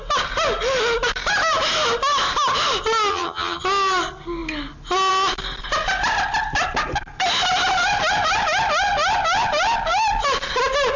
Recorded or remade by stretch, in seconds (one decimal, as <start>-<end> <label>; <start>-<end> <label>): 0.0-3.1 recorded; 3.1-3.6 remade; 3.6-11.0 recorded